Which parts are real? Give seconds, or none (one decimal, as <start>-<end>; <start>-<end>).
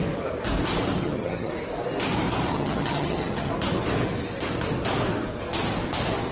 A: 0.0-1.0; 1.5-2.5; 3.5-6.3